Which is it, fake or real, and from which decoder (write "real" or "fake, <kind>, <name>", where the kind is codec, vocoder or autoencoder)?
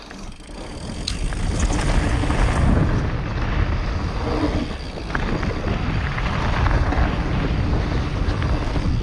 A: real